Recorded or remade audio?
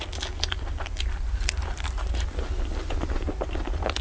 recorded